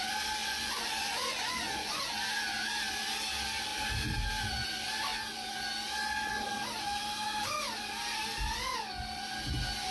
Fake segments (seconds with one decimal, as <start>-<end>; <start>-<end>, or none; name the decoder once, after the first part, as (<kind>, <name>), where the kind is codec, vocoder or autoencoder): 0.4-2.0 (vocoder, Vocos)